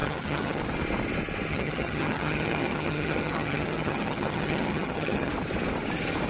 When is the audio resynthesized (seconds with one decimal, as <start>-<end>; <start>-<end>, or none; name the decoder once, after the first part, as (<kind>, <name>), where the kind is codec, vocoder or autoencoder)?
0.0-0.6 (vocoder, HiFi-GAN); 1.5-5.3